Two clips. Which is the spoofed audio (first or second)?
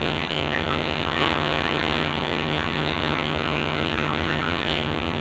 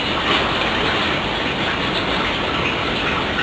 first